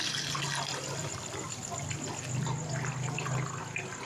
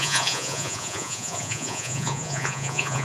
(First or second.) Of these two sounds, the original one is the first